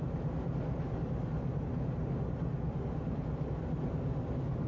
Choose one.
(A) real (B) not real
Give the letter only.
A